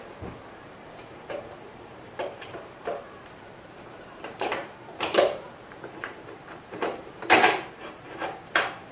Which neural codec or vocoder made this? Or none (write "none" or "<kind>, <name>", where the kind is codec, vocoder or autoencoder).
vocoder, BigVGAN v2